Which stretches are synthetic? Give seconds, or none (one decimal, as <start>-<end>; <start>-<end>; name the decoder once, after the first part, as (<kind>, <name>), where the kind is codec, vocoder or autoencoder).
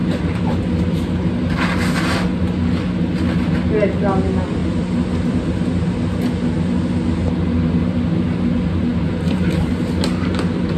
0.0-0.8 (vocoder, BigVGAN v2); 4.6-5.5; 8.9-9.7